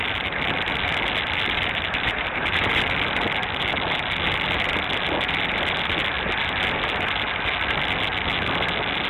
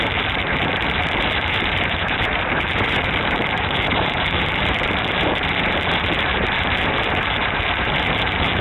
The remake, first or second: second